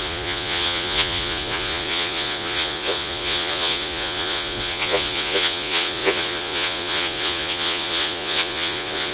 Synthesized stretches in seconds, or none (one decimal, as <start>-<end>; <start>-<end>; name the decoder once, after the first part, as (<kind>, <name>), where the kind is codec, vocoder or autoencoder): 0.0-9.1 (vocoder, Vocos)